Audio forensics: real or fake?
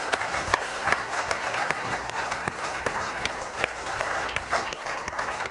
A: fake